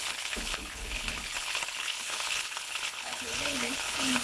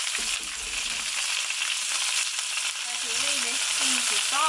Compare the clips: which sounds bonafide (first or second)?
second